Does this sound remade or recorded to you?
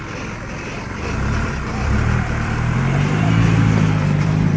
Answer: remade